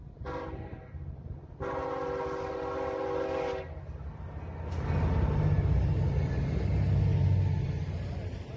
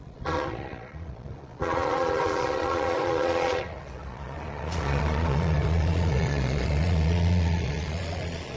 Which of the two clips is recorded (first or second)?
first